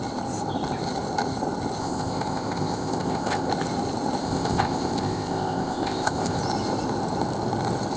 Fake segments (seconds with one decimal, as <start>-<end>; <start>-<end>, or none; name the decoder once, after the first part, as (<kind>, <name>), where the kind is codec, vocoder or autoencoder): 1.8-3.5 (codec, ZipCodec); 4.2-6.4